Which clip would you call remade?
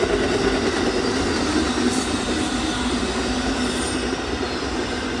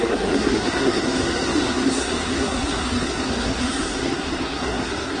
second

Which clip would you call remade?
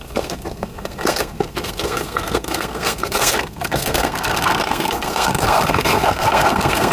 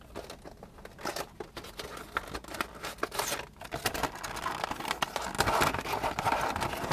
first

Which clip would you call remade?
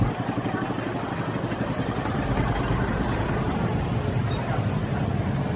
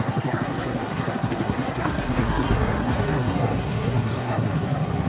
second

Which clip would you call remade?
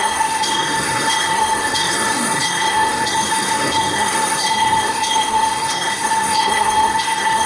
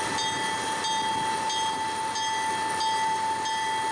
first